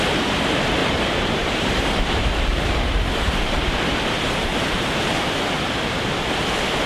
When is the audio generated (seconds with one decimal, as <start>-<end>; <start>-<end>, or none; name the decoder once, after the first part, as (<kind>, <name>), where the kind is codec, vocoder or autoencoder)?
0.8-3.1 (vocoder, BigVGAN v2); 4.5-5.1